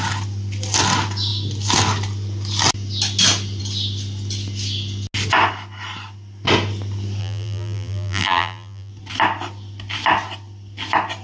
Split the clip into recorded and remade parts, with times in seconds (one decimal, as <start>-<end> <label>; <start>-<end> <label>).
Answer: 0.0-7.2 recorded; 7.2-8.9 remade; 8.9-11.2 recorded